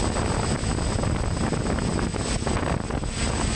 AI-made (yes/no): no